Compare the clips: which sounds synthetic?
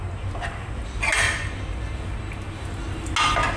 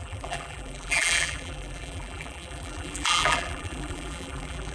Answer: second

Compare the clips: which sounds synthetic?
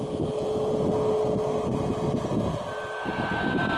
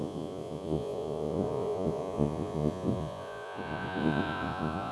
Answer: second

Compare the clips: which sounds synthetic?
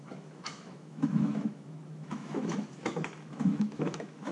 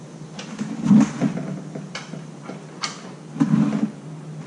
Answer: first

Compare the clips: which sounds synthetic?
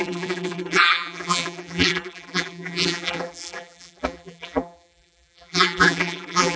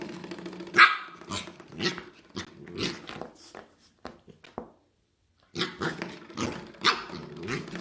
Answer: first